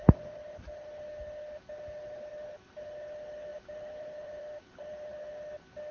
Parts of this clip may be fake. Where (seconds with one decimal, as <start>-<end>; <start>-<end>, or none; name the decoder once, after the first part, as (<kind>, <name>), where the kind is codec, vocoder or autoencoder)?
3.5-4.9 (vocoder, BigVGAN v2)